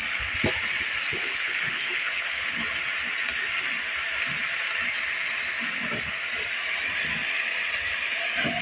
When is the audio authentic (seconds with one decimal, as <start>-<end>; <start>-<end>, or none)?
0.0-1.1; 2.5-8.6